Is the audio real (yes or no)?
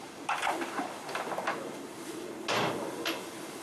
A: yes